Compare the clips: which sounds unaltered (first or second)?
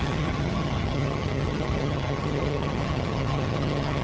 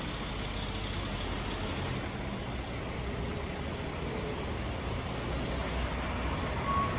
second